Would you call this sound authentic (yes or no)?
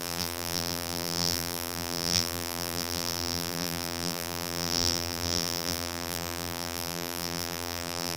no